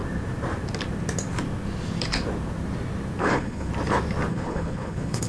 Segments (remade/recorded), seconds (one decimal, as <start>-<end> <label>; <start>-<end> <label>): 0.0-3.2 recorded; 3.2-3.7 remade; 3.7-4.3 recorded; 4.3-5.3 remade